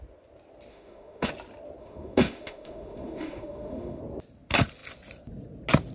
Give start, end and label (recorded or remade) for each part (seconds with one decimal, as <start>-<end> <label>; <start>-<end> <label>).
0.0-0.7 recorded; 0.7-1.3 remade; 1.3-1.8 recorded; 1.8-4.0 remade; 4.0-5.9 recorded